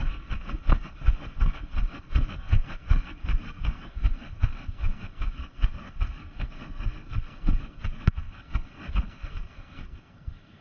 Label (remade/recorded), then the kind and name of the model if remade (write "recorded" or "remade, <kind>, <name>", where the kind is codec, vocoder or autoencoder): remade, codec, SNAC